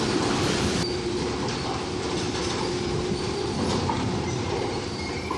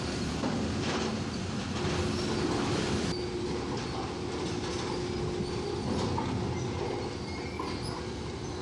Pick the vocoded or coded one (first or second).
first